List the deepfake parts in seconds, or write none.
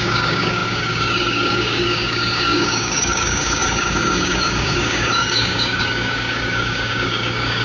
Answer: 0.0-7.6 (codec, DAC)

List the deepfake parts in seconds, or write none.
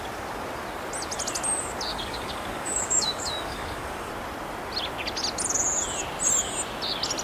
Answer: 1.9-4.1 (codec, DAC)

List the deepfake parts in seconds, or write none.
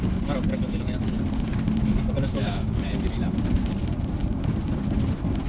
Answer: 2.3-2.8 (codec, DAC)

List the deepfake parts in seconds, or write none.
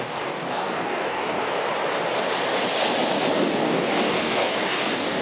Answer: 0.0-1.6 (codec, DAC); 3.3-5.2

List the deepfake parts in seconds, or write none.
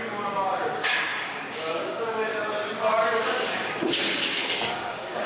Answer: 0.0-2.3 (codec, DAC); 3.2-5.3